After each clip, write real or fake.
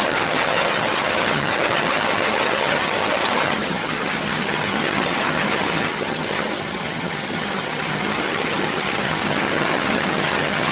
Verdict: fake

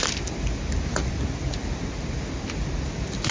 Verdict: real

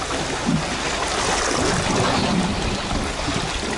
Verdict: real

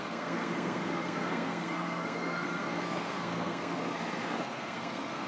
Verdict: fake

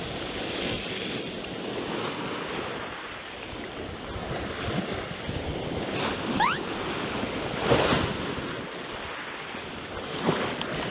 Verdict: real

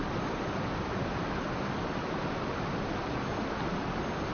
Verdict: real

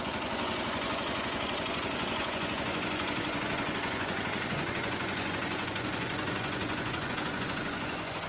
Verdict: fake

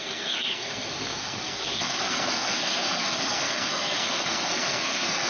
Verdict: fake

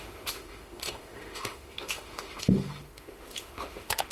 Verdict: fake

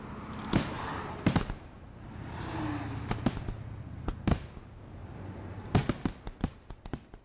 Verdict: real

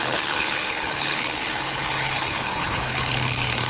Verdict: fake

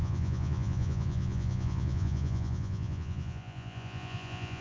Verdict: fake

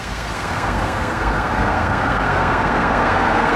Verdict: fake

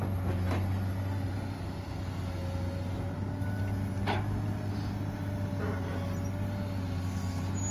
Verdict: real